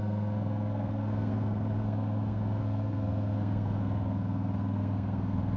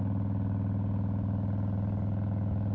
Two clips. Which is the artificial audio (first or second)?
first